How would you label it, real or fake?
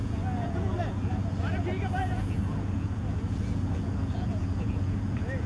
fake